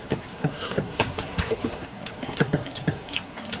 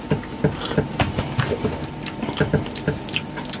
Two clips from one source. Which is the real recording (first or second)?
second